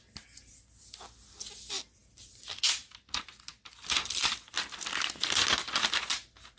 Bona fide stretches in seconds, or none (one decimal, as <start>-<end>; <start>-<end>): 0.0-6.6